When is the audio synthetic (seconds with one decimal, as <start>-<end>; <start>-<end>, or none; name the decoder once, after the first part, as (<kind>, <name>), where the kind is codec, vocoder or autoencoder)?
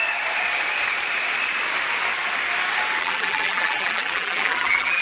3.0-5.0 (vocoder, BigVGAN v2)